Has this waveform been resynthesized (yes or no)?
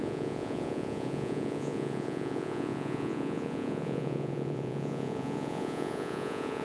yes